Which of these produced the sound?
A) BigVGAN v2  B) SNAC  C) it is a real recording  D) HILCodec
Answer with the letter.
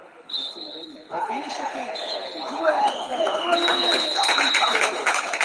D